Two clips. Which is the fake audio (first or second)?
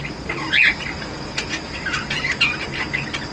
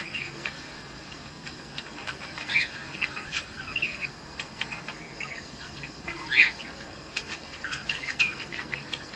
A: second